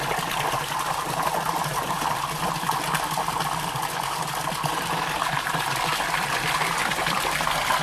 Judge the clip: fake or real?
real